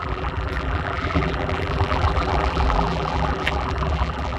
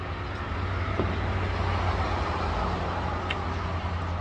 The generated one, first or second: first